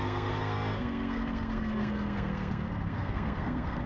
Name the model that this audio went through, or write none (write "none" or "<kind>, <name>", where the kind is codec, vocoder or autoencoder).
codec, SNAC